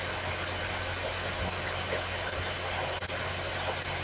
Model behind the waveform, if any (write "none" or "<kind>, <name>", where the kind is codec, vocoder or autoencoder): none